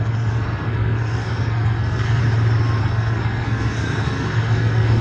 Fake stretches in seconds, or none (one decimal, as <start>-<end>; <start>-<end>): 0.0-2.2; 2.8-5.0